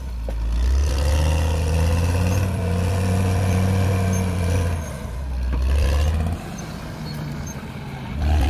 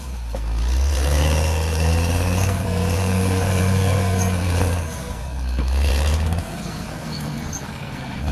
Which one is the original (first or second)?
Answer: first